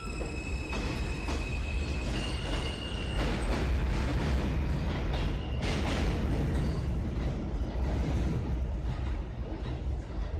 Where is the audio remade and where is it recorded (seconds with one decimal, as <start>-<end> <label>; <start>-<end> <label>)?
0.0-10.4 recorded